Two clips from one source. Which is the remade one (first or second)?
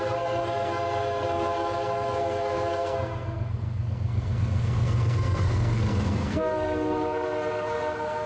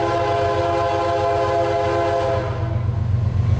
first